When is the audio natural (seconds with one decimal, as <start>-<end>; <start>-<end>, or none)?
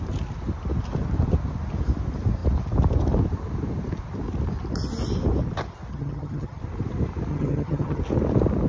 0.0-5.9; 6.6-7.3; 8.0-8.7